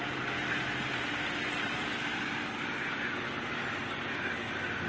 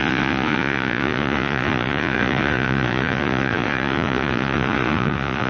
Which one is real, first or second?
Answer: first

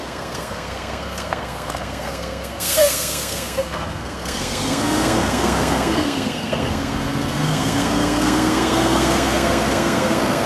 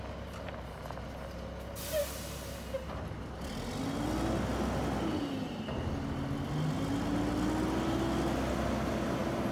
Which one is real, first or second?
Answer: second